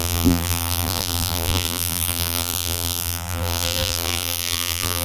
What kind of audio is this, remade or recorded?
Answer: remade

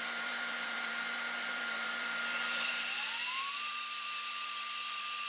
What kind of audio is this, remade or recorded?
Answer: remade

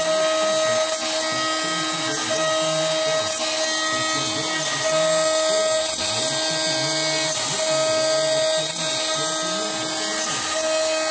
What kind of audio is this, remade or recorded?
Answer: recorded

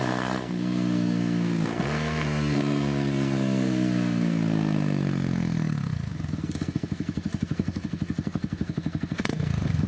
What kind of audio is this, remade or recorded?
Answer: remade